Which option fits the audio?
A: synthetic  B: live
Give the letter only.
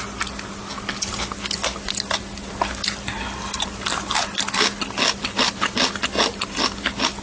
B